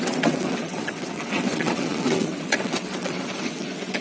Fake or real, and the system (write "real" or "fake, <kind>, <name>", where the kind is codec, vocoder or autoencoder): fake, vocoder, WaveNeXt